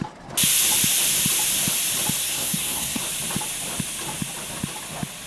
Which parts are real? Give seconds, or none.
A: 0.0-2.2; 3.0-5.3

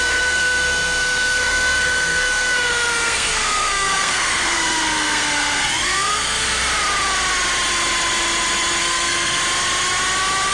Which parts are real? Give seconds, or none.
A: 6.6-8.8; 9.4-10.5

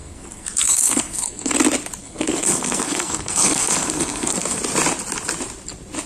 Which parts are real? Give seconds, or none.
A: 1.5-2.0; 4.6-6.1

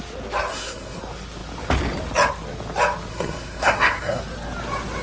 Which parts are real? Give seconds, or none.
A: 0.0-0.5; 1.0-3.1; 4.2-5.0

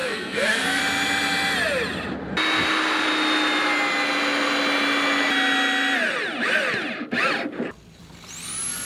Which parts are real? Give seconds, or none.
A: 0.8-8.8